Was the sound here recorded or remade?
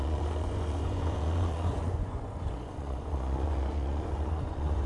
remade